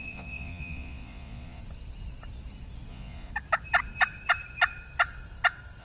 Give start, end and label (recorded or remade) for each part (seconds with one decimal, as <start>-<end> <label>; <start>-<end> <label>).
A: 0.0-1.6 remade; 1.6-2.9 recorded; 2.9-3.3 remade; 3.3-5.8 recorded